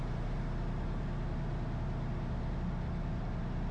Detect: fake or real real